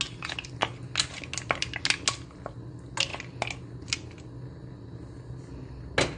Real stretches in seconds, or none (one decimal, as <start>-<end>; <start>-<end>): 0.0-6.2